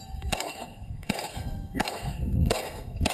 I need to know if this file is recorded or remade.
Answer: remade